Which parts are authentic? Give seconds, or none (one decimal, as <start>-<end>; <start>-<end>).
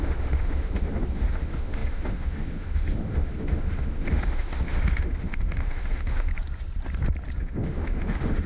6.3-7.4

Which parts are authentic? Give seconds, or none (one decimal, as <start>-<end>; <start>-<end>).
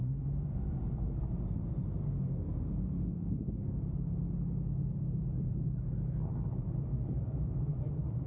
1.8-4.8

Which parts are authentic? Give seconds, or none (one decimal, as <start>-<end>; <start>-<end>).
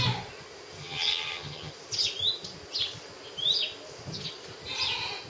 0.0-0.8; 1.7-5.3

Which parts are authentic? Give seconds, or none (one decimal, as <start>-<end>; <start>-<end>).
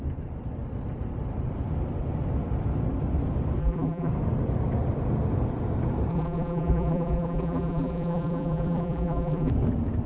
0.0-3.6; 4.1-6.1; 9.5-10.1